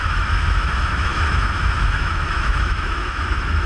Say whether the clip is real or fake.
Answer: fake